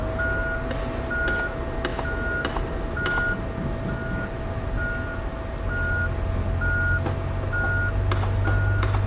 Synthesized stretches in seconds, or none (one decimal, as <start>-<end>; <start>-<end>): none